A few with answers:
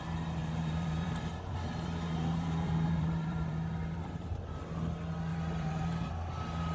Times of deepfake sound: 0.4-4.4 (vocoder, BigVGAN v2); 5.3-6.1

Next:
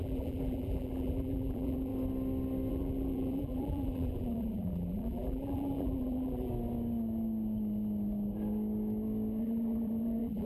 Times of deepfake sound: 0.0-1.9 (vocoder, BigVGAN v2); 2.7-6.5; 9.4-10.5

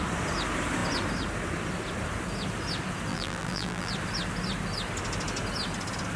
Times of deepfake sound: 3.1-3.9 (vocoder, BigVGAN v2)

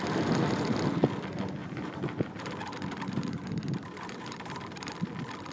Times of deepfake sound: 1.6-4.9 (vocoder, BigVGAN v2)

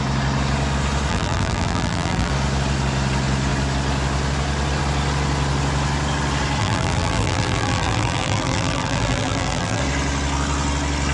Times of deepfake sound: 1.1-2.3 (vocoder, BigVGAN v2); 6.6-9.8

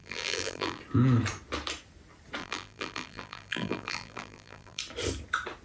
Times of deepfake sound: 0.0-0.8 (vocoder, BigVGAN v2); 2.4-4.8

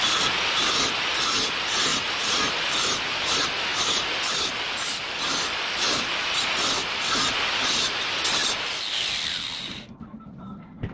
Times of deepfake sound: 1.9-2.7 (vocoder, BigVGAN v2)